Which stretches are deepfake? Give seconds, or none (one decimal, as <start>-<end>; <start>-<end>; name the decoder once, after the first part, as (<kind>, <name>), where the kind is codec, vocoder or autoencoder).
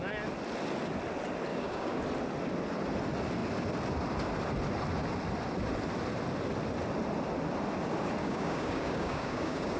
1.5-2.0 (codec, DAC); 8.2-9.8